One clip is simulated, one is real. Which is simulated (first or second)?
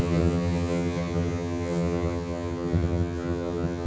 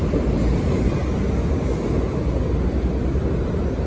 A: first